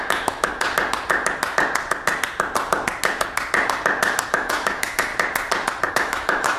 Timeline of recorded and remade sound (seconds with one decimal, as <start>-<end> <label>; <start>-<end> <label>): 0.0-0.5 remade; 0.5-4.3 recorded; 4.3-5.1 remade; 5.1-5.9 recorded; 5.9-6.6 remade